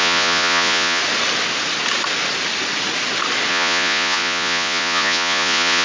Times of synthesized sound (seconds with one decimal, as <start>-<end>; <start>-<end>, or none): 0.0-1.0; 3.5-5.8